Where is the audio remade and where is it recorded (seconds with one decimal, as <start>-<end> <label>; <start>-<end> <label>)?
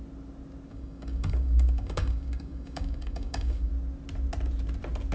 0.0-0.7 recorded; 0.7-3.7 remade; 3.7-5.1 recorded